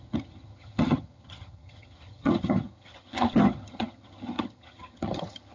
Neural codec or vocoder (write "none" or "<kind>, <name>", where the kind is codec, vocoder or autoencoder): vocoder, HiFi-GAN